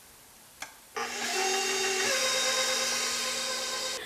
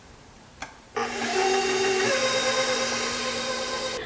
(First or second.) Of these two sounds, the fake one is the second